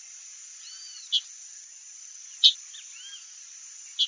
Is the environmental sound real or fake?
real